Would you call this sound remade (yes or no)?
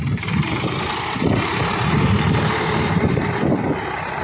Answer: yes